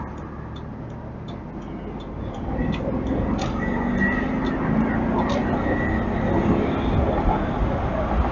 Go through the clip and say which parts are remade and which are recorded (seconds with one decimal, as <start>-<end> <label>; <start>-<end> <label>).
0.0-8.3 recorded